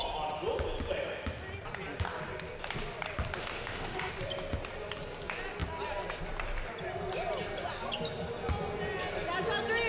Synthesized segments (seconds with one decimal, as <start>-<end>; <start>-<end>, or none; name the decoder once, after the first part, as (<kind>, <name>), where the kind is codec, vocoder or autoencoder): 3.4-4.1 (autoencoder, DAC-VAE)